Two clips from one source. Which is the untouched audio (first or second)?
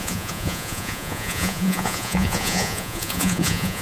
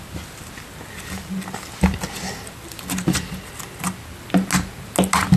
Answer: second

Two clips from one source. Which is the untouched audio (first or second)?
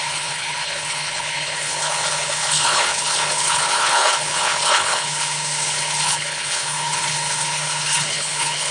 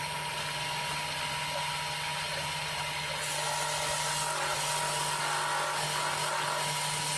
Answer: second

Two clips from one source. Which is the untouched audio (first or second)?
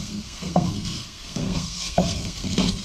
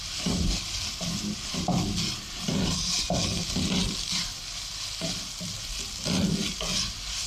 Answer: second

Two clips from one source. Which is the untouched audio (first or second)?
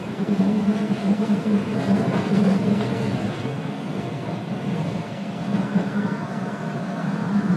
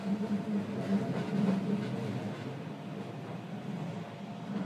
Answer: second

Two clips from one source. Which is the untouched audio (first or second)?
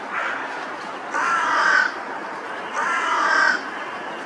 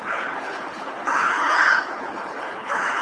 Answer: first